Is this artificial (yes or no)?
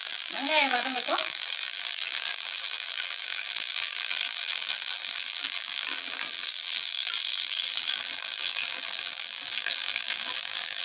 yes